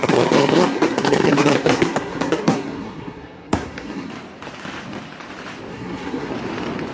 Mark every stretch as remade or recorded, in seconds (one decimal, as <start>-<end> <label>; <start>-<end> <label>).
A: 0.0-4.1 remade; 4.1-5.7 recorded; 5.7-6.3 remade; 6.3-6.9 recorded